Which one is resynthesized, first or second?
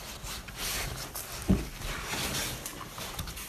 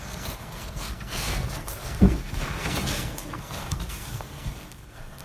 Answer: second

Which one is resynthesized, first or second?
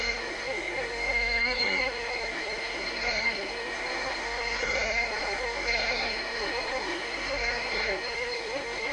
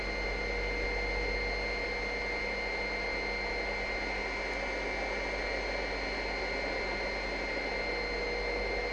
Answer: first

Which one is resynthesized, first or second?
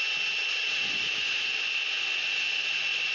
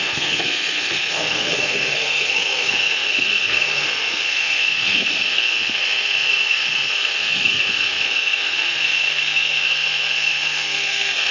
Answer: second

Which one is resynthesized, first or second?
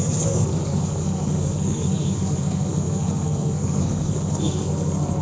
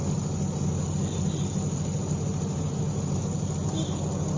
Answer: first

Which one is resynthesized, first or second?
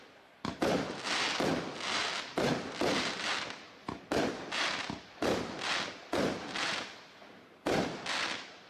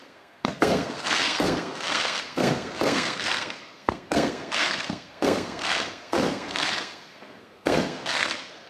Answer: second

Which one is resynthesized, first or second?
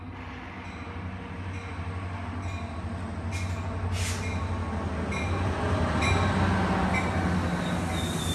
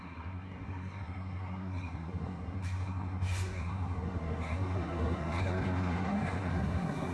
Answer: second